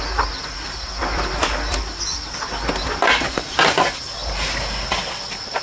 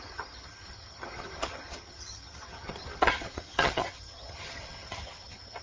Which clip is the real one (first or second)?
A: first